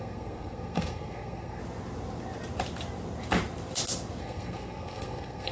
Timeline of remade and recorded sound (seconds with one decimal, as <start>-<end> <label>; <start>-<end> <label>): 0.0-1.6 remade; 1.6-4.2 recorded; 4.2-5.5 remade